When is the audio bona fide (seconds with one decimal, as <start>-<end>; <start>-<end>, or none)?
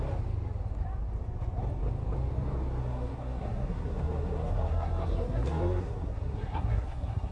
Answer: 0.0-2.8